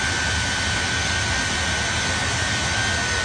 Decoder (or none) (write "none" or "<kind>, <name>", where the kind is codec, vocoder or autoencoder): none